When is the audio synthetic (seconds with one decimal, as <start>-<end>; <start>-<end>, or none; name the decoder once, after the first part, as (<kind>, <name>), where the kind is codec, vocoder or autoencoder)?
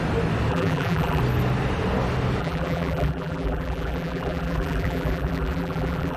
0.5-1.2 (vocoder, BigVGAN v2); 2.4-6.2